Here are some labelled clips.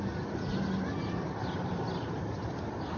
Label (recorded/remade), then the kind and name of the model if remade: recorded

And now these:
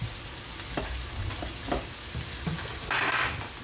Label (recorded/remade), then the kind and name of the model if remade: recorded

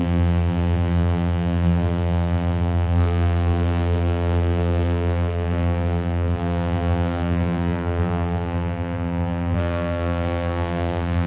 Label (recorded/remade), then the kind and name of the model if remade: remade, vocoder, BigVGAN v2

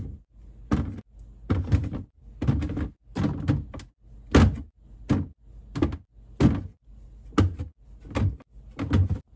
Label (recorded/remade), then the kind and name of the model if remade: recorded